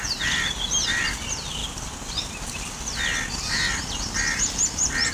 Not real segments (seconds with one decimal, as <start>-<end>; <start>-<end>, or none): none